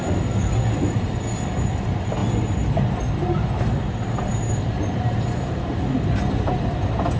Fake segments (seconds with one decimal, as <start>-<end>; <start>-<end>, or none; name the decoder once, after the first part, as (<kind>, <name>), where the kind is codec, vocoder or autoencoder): none